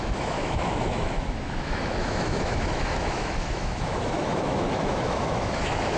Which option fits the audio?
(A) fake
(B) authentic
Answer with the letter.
A